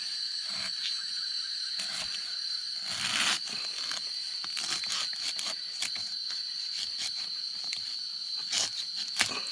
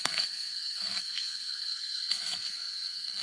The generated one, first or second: second